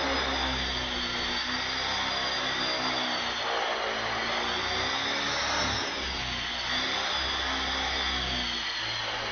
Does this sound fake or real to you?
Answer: real